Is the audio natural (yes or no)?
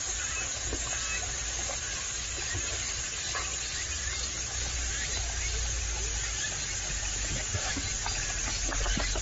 yes